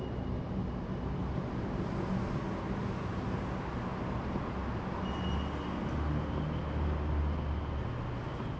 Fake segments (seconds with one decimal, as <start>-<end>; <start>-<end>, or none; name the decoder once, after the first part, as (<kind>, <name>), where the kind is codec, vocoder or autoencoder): 1.2-1.8 (vocoder, BigVGAN v2)